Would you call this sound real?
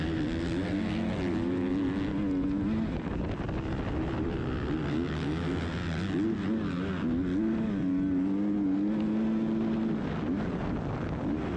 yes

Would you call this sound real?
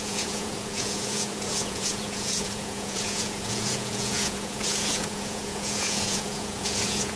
no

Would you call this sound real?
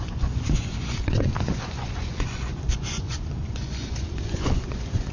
no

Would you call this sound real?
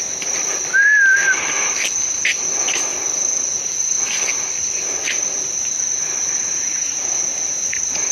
yes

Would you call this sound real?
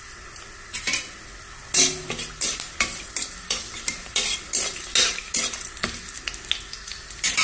yes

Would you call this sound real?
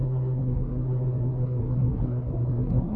no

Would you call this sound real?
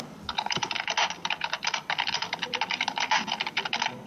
yes